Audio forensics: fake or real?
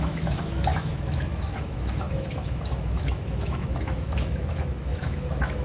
fake